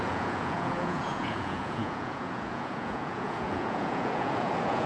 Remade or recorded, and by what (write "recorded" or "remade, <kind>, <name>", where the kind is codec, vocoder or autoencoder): remade, vocoder, Vocos